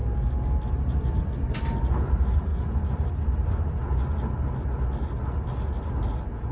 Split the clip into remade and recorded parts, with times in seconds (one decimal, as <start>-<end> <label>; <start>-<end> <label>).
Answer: 0.0-6.5 recorded